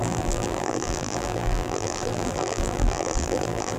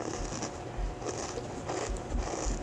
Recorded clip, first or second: second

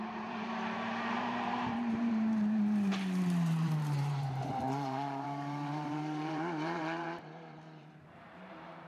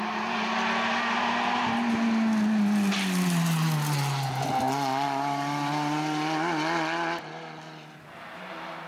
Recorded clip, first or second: second